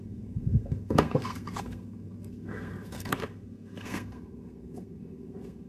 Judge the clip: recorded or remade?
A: remade